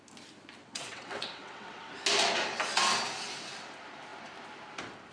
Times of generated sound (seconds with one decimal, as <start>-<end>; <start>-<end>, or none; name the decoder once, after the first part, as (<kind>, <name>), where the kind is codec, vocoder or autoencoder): 0.6-1.9 (vocoder, WaveNeXt)